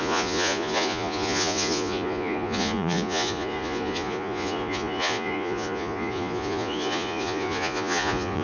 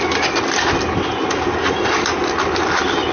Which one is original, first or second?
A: second